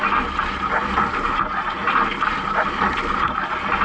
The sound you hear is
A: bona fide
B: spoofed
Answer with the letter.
A